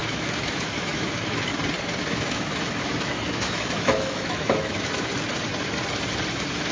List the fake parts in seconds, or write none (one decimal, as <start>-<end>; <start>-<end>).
0.0-1.5; 2.0-5.1; 6.3-6.7

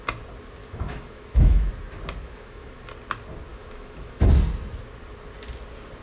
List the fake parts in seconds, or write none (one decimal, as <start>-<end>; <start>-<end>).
0.6-1.7; 2.2-2.8; 3.5-4.3

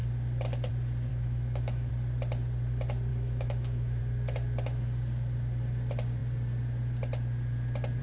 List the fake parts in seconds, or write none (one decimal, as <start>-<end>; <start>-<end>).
1.1-1.9; 3.1-4.0

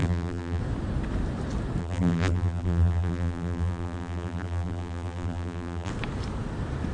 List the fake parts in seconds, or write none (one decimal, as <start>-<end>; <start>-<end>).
0.0-0.6; 1.8-5.9